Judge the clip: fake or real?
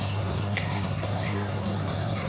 fake